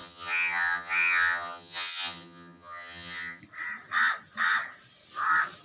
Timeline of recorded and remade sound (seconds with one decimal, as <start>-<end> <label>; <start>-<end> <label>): 0.0-3.4 remade; 3.4-5.6 recorded